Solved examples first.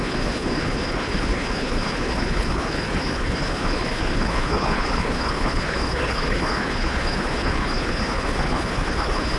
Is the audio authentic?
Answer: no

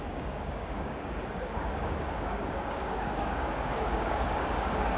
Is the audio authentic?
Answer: no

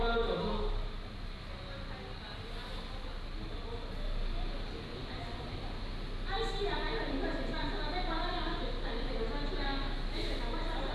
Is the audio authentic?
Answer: yes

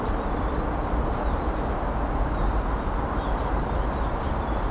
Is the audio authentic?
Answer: yes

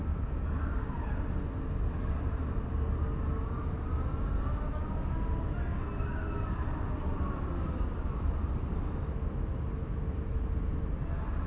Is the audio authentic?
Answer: yes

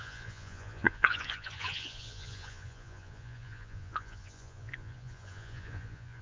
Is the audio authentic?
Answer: no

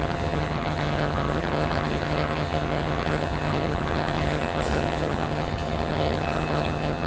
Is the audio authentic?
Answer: no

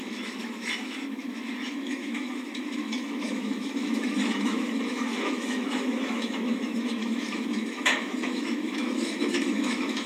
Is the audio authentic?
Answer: no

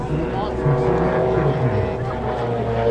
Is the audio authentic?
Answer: yes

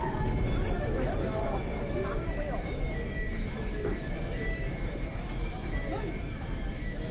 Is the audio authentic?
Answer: no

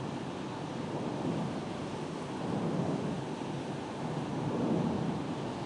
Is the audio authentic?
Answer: yes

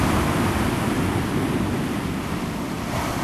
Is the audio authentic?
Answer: yes